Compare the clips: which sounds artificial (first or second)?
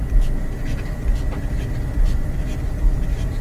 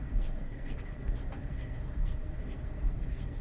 second